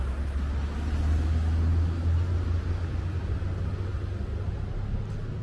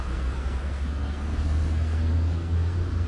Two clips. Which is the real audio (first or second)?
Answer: first